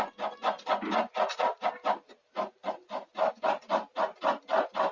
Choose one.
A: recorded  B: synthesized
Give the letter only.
A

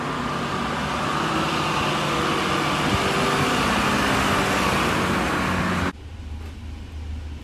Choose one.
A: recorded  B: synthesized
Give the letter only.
A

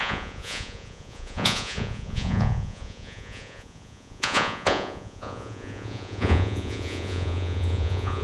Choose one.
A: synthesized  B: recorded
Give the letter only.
A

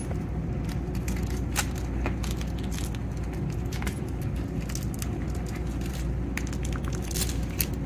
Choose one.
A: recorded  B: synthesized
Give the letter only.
A